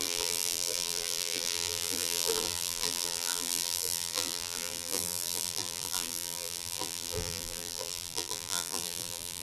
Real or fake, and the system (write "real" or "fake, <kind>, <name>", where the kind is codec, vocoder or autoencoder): fake, vocoder, BigVGAN v2